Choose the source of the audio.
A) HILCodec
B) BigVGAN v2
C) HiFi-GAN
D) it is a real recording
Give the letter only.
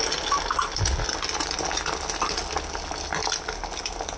D